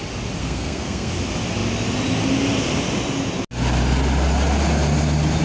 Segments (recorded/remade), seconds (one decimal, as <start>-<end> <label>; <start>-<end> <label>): 0.0-0.4 recorded; 0.4-1.1 remade; 1.1-5.4 recorded